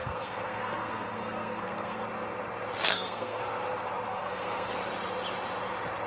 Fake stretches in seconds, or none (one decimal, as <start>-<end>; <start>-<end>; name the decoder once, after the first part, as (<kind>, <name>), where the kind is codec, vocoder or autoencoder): 0.0-2.0 (codec, SNAC); 2.9-3.4; 4.1-4.7

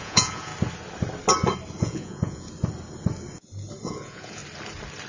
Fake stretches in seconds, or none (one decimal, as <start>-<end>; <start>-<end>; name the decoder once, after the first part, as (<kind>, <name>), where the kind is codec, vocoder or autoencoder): 0.0-0.5 (vocoder, Vocos); 1.8-2.5; 3.8-4.4

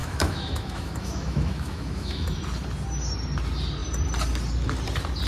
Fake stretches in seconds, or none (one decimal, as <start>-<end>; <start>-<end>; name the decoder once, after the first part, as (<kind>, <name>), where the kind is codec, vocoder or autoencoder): 0.0-2.4 (autoencoder, DAC-VAE)